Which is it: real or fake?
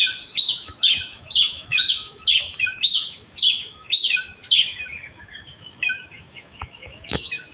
fake